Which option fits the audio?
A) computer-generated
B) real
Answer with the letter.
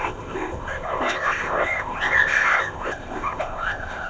A